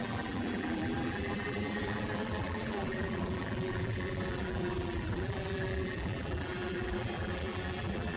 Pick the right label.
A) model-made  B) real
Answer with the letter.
A